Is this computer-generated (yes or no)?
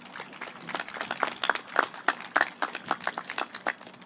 no